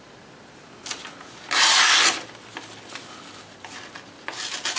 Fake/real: real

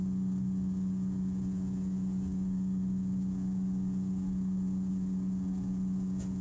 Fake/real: fake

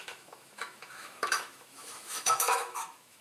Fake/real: fake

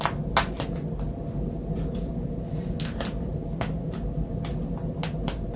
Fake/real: real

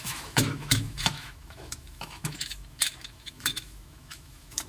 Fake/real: fake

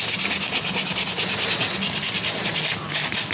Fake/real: real